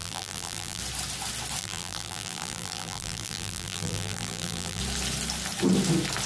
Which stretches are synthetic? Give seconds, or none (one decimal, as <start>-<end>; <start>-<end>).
0.0-0.8; 1.6-4.8